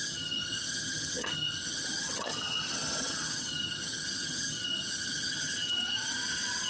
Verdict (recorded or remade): remade